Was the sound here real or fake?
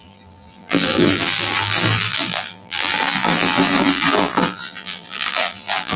fake